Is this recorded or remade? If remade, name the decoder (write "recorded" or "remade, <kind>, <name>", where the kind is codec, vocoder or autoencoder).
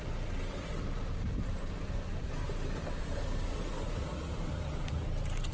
remade, vocoder, BigVGAN v2